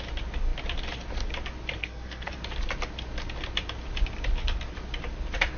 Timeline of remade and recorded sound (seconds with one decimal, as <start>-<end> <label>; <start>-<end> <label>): 0.0-1.8 recorded; 1.8-2.3 remade; 2.3-5.6 recorded